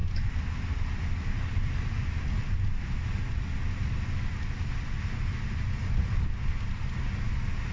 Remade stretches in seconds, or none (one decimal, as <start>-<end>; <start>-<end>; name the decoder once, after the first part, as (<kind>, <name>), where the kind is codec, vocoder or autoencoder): none